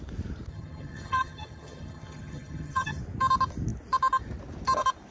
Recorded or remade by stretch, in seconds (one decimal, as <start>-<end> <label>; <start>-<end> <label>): 0.0-0.5 recorded; 0.5-3.0 remade; 3.0-5.1 recorded